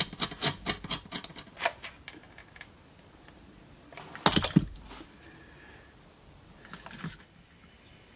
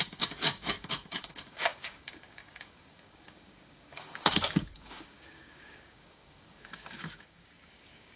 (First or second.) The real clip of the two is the first